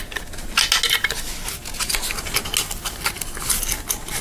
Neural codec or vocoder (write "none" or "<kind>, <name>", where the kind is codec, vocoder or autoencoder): none